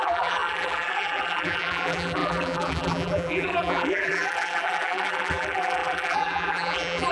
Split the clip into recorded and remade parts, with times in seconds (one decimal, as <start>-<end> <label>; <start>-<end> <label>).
0.0-7.1 remade